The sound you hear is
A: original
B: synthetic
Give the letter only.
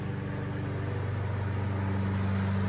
A